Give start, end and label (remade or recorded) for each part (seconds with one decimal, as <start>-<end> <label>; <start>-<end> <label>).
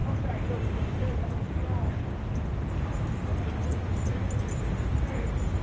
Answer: 0.0-5.6 recorded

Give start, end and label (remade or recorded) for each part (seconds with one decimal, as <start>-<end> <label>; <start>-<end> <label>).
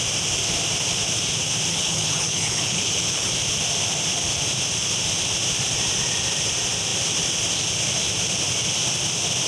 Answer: 0.0-1.7 recorded; 1.7-3.3 remade; 3.3-9.5 recorded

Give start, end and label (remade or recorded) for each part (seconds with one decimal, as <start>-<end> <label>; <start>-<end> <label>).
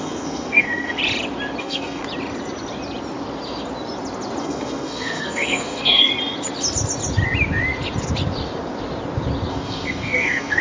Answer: 0.0-1.0 remade; 1.0-1.6 recorded; 1.6-2.0 remade; 2.0-4.4 recorded; 4.4-6.1 remade; 6.1-9.5 recorded; 9.5-10.6 remade